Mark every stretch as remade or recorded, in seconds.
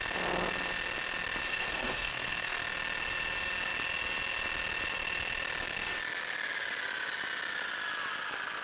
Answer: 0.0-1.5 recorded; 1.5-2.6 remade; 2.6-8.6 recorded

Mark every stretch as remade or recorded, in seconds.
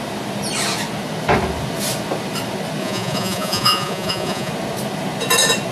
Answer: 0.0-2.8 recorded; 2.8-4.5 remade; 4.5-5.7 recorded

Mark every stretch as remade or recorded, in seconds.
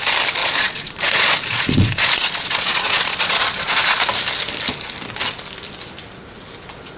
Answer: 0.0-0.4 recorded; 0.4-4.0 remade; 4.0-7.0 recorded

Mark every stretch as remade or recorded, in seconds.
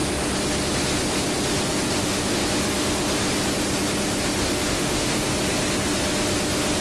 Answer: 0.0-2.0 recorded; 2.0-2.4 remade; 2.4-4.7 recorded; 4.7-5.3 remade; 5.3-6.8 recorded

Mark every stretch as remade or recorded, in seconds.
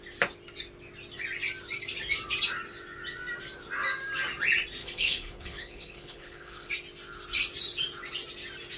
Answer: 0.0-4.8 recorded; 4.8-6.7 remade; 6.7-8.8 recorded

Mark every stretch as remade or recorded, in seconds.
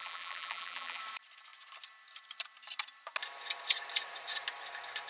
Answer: 0.0-1.0 remade; 1.0-5.1 recorded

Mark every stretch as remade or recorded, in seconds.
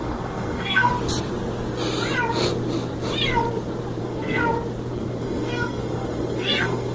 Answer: 0.0-0.9 remade; 0.9-4.0 recorded; 4.0-4.4 remade; 4.4-4.9 recorded; 4.9-6.9 remade